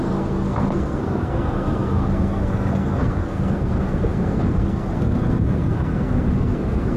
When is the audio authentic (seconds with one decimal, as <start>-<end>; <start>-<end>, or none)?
none